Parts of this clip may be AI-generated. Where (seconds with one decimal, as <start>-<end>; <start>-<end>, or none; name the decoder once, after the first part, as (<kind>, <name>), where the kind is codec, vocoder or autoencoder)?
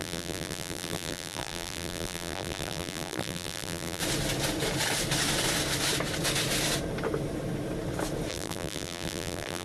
0.0-4.0 (vocoder, BigVGAN v2); 8.3-9.6